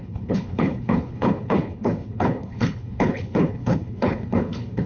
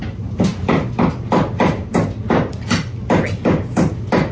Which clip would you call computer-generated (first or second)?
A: first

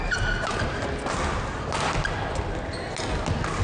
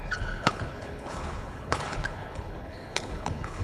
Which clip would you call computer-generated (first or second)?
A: second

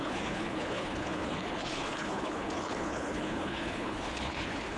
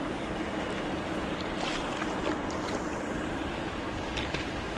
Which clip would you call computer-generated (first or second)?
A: first